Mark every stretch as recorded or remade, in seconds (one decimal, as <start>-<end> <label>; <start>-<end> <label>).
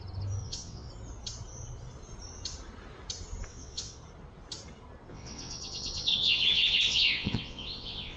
0.0-0.4 recorded; 0.4-0.9 remade; 0.9-3.5 recorded; 3.5-4.0 remade; 4.0-5.1 recorded; 5.1-8.2 remade